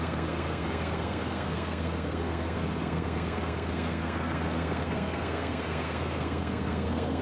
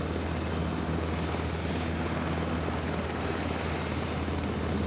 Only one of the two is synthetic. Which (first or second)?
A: first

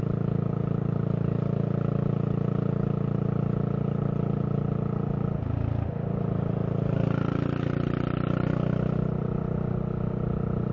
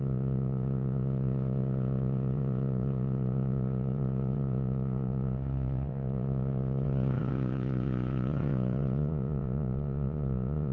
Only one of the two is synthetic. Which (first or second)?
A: second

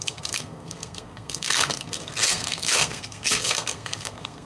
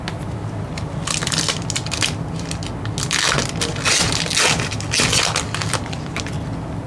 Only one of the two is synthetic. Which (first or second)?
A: first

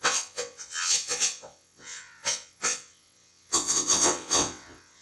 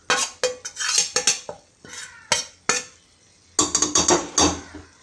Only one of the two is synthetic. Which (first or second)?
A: first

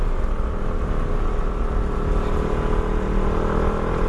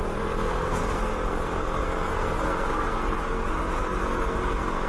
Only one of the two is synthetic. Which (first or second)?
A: second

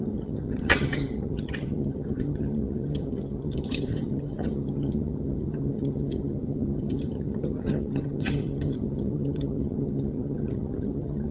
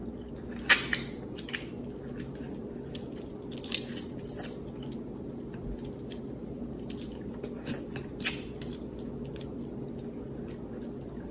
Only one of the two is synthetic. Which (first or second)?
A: first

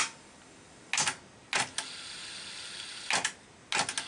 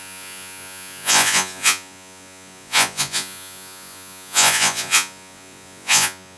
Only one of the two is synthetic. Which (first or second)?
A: second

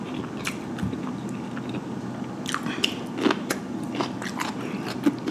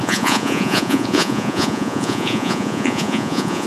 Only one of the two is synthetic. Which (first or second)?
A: second